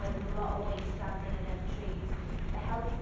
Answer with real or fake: fake